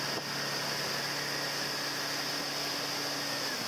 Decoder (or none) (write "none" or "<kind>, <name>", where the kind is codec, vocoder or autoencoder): none